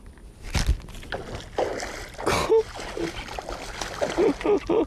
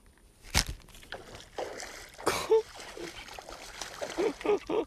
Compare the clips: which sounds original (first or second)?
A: first